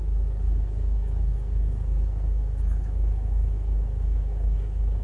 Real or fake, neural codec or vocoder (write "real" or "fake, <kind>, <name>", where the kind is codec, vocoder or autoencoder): fake, codec, SNAC